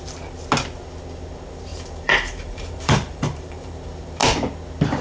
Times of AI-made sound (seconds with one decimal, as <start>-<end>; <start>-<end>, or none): 1.7-3.7